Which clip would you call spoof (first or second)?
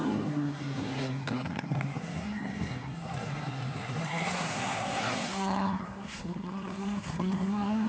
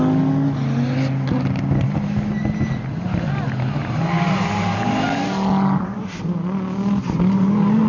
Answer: first